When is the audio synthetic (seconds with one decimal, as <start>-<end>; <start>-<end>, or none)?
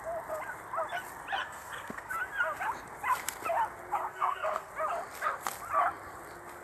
1.4-2.1; 4.1-4.7